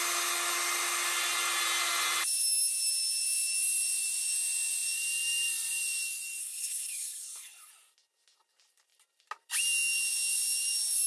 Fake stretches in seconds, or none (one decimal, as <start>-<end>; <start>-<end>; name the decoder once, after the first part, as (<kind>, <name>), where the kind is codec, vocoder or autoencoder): 6.4-7.7 (codec, HILCodec)